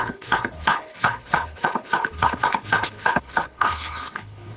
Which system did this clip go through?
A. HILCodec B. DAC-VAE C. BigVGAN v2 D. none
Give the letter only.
A